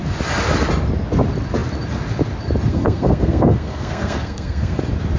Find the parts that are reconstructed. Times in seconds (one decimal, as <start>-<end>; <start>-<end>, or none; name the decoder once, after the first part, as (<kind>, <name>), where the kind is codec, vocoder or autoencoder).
2.7-4.8 (codec, SNAC)